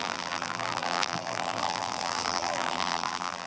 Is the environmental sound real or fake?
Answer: fake